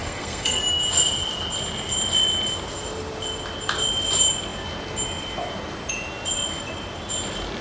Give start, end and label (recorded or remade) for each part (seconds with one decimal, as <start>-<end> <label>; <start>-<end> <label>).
0.0-0.6 remade; 0.6-7.6 recorded